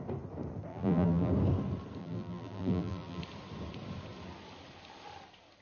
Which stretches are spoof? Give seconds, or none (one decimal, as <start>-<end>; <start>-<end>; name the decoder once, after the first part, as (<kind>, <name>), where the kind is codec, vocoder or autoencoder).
0.7-1.3 (vocoder, BigVGAN v2); 2.0-3.2